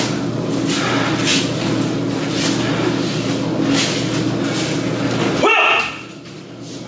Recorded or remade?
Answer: recorded